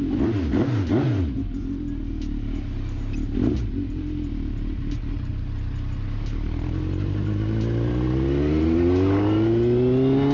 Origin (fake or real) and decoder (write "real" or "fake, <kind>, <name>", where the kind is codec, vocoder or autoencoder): real